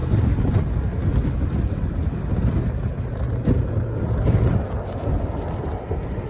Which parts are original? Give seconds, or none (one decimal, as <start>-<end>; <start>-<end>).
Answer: 0.0-6.3